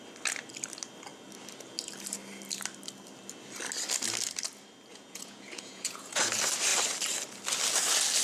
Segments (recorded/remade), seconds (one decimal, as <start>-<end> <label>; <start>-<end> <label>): 0.0-4.9 recorded; 4.9-6.2 remade; 6.2-8.2 recorded